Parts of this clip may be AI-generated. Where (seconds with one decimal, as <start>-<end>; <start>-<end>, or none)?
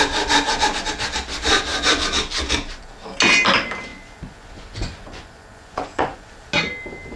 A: 3.9-6.3